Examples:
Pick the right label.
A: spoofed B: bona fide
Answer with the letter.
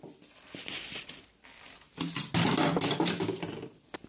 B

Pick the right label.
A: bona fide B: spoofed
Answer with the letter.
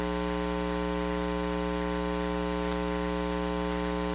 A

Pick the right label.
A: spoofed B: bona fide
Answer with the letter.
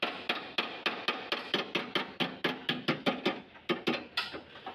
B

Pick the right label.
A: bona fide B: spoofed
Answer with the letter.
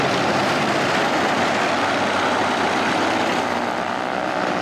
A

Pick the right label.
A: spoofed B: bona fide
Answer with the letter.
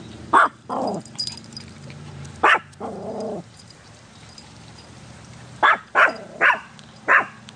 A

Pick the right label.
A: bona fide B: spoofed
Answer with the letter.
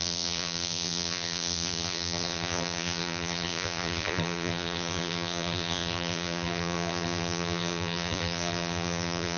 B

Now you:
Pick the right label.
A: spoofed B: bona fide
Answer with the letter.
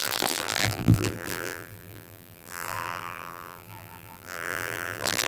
A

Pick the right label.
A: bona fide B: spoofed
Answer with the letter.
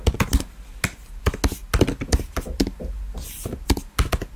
A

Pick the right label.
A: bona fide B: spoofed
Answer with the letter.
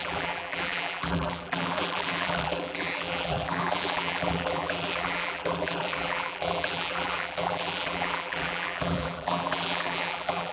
B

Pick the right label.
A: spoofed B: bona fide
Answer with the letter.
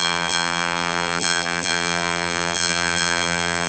A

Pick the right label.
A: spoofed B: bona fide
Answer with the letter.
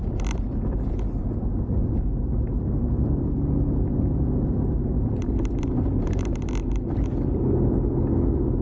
A